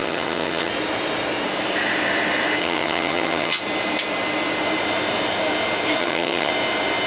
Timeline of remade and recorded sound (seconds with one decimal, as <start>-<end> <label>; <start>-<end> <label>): 0.0-0.7 remade; 0.7-2.6 recorded; 2.6-3.6 remade; 3.6-6.0 recorded; 6.0-6.5 remade; 6.5-7.1 recorded